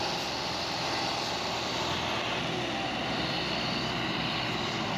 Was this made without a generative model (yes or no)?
yes